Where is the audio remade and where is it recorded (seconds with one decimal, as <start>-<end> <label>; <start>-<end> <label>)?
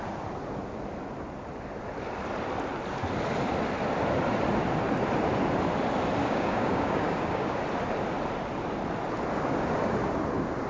0.0-6.2 recorded; 6.2-7.6 remade; 7.6-10.7 recorded